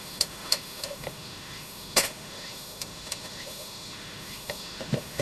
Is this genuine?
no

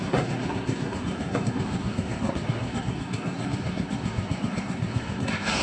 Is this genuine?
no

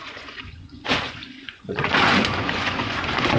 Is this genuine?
no